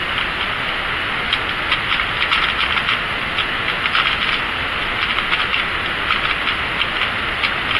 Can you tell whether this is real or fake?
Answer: real